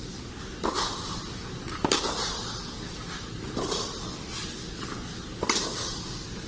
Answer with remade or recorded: recorded